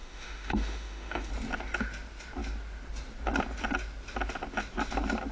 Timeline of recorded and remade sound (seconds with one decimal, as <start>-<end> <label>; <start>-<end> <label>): 0.0-1.3 remade; 1.3-5.3 recorded